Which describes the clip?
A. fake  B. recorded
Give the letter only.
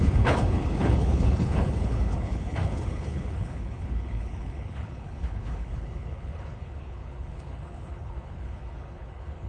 A